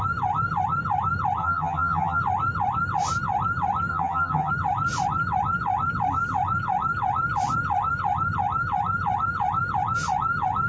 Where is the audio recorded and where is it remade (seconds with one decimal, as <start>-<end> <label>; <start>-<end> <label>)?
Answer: 0.0-1.4 recorded; 1.4-2.2 remade; 2.2-3.9 recorded; 3.9-4.5 remade; 4.5-10.7 recorded